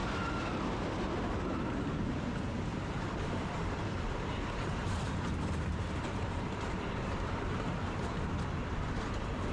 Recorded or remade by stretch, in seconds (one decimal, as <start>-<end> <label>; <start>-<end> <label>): 0.0-2.7 recorded; 2.7-3.5 remade; 3.5-4.8 recorded; 4.8-8.2 remade; 8.2-9.5 recorded